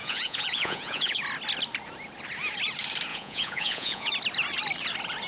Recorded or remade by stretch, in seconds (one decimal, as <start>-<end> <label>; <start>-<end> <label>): 0.0-1.2 remade; 1.2-3.1 recorded; 3.1-4.1 remade; 4.1-5.3 recorded